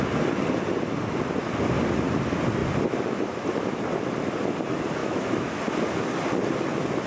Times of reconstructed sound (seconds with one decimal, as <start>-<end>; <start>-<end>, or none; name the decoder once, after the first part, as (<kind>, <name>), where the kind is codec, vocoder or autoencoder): 5.0-5.6 (autoencoder, DAC-VAE)